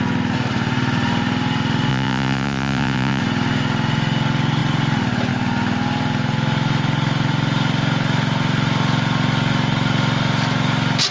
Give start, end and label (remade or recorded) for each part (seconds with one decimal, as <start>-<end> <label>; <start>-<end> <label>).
0.0-1.9 recorded; 1.9-3.2 remade; 3.2-11.1 recorded